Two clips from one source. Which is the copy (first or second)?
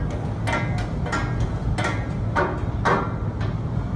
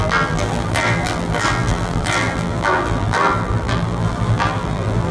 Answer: second